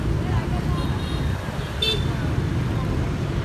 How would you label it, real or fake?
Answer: real